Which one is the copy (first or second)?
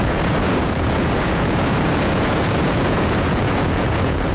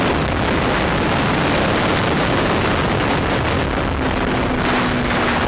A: first